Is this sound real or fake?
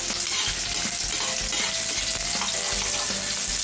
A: real